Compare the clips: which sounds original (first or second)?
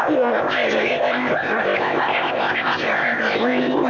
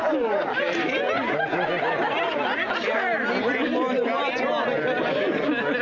second